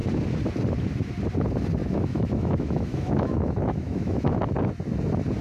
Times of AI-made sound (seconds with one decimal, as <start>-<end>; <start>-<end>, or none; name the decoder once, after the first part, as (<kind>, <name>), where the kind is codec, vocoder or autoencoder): 1.8-4.4 (autoencoder, DAC-VAE)